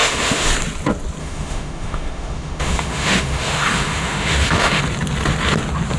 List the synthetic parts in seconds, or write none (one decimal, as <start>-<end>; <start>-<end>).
0.0-0.5; 1.2-4.8